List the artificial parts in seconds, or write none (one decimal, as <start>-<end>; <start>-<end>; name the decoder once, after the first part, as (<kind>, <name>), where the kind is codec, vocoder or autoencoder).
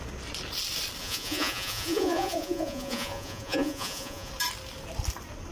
1.0-4.3 (vocoder, Vocos)